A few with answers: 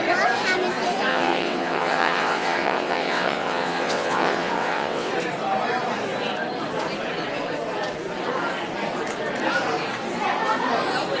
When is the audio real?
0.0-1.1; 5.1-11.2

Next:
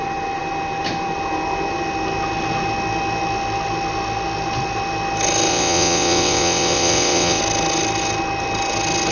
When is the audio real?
0.0-5.5; 7.4-9.1

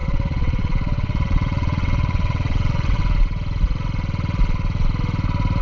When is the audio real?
3.0-5.6

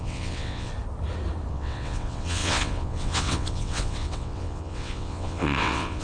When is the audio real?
0.7-1.5

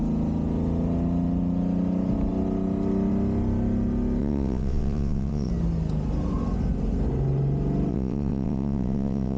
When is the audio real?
0.0-4.2; 5.5-7.9

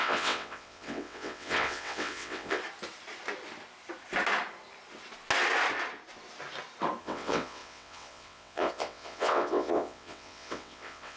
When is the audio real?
2.6-7.0